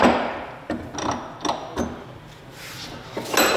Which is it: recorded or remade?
recorded